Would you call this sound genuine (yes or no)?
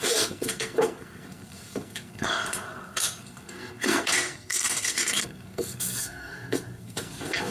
no